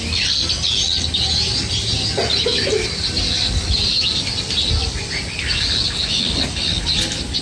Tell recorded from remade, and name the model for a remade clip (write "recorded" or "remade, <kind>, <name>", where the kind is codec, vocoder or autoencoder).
recorded